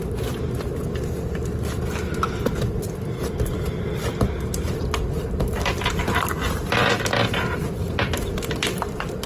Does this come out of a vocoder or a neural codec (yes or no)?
no